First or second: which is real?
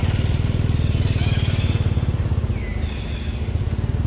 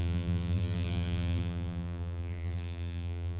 first